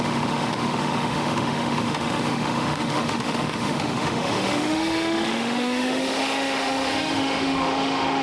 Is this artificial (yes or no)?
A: yes